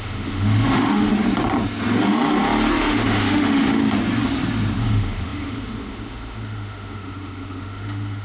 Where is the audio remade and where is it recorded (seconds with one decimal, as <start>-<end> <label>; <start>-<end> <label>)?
0.0-1.1 remade; 1.1-2.7 recorded; 2.7-3.8 remade; 3.8-4.8 recorded; 4.8-8.2 remade